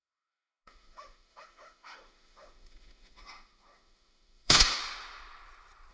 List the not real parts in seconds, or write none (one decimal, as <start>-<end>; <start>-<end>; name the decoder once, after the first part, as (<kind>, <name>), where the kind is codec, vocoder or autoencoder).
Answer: 0.0-4.8 (autoencoder, DAC-VAE)